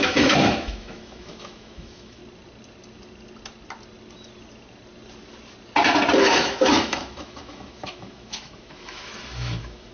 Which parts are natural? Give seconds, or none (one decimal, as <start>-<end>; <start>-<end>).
2.2-6.2